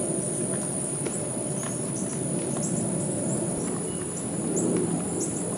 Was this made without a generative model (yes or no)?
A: yes